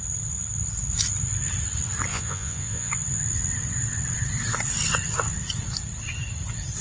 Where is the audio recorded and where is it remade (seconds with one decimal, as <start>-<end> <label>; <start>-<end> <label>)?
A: 0.0-2.1 recorded; 2.1-2.9 remade; 2.9-6.8 recorded